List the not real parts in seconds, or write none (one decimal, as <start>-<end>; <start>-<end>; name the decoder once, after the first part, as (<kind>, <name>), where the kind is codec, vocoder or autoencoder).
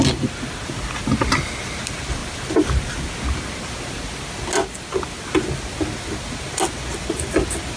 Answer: none